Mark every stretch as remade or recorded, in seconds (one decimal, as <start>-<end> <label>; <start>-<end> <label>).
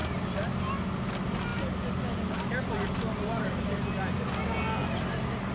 0.0-5.5 recorded